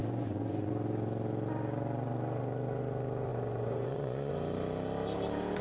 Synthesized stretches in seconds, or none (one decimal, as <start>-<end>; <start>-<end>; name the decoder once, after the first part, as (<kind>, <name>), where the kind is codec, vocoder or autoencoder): 0.0-0.7 (vocoder, Vocos); 3.3-4.3